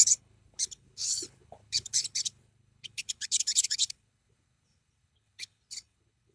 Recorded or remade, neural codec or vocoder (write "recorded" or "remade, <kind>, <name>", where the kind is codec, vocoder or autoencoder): remade, codec, HILCodec